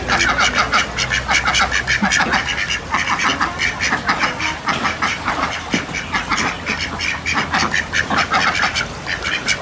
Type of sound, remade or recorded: recorded